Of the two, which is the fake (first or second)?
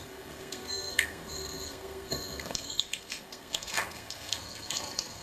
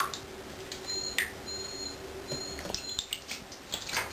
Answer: first